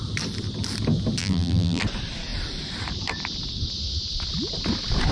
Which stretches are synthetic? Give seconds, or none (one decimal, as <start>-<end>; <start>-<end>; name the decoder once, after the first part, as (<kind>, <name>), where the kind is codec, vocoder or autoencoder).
1.2-1.8 (vocoder, BigVGAN v2)